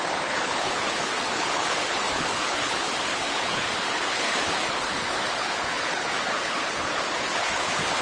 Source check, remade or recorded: remade